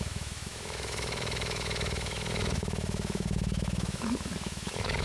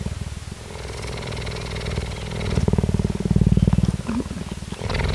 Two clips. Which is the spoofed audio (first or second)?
first